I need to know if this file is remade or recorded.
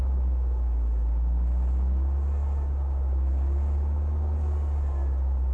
recorded